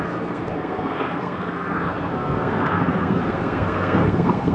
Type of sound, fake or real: fake